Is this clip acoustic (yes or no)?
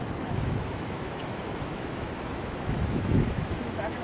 no